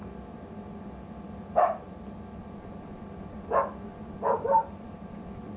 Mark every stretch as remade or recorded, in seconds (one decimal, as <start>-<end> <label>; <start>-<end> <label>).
0.0-2.4 recorded; 2.4-3.5 remade; 3.5-3.9 recorded; 3.9-5.6 remade